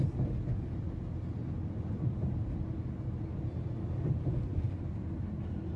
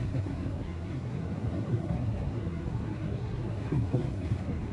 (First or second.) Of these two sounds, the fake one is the second